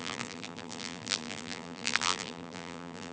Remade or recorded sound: remade